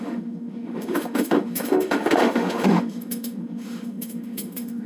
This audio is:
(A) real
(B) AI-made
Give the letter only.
B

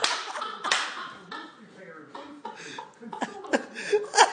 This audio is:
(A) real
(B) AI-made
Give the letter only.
A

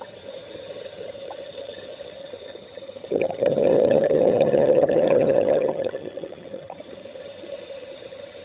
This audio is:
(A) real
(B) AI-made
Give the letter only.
B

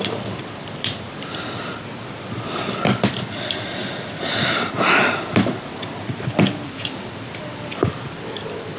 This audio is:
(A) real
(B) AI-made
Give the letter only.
B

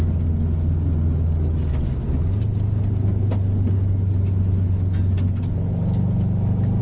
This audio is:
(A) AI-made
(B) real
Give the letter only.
B